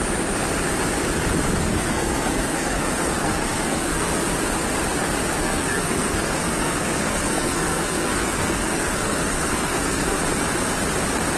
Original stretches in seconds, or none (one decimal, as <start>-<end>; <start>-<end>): 0.0-1.6; 4.2-5.4; 10.2-11.4